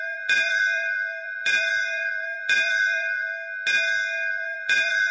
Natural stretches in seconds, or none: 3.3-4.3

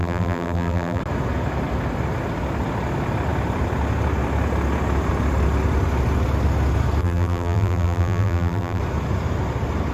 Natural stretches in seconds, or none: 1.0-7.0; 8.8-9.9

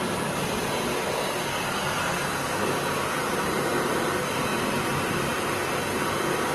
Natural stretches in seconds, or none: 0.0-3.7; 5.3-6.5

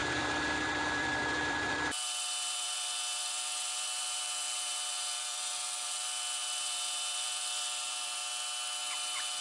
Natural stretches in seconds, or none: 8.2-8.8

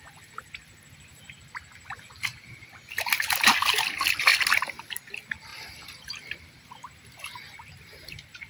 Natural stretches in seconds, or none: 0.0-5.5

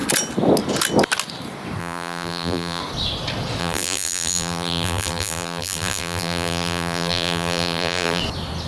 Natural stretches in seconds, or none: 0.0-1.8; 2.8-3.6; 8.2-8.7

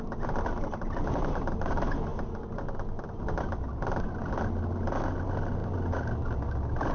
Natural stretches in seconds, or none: 0.0-6.9